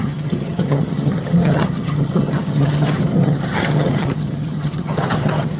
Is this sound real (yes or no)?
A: no